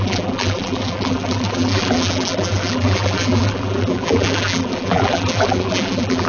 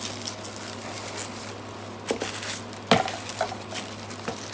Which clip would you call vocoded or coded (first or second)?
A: first